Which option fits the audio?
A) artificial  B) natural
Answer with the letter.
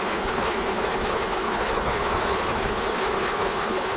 A